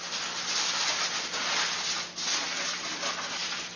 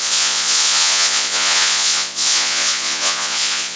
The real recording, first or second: first